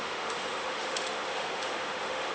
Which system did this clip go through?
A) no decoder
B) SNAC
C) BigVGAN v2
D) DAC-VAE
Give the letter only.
D